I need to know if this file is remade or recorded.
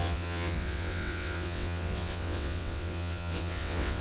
remade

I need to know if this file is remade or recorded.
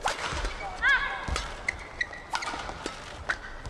recorded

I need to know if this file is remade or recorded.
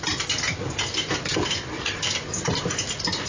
recorded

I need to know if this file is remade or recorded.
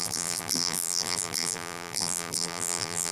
remade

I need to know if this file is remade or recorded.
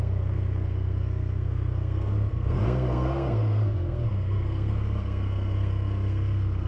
remade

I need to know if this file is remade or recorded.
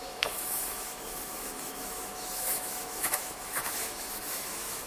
remade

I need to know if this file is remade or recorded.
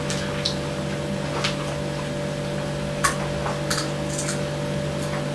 recorded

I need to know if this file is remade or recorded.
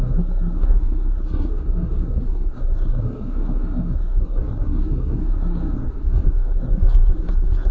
remade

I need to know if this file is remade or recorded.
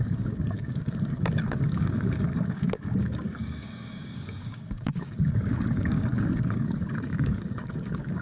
remade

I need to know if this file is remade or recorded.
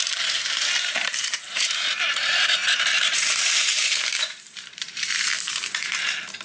remade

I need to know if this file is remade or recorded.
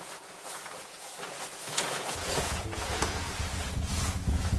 remade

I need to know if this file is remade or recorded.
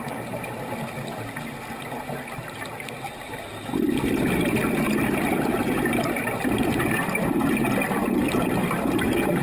recorded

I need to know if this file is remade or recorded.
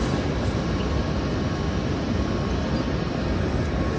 recorded